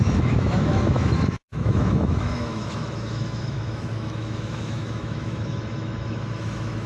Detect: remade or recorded remade